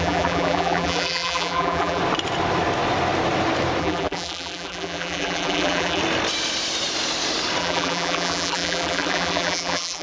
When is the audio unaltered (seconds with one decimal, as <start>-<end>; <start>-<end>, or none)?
2.0-3.8; 6.0-7.6